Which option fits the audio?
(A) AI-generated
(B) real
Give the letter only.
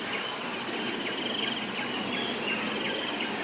B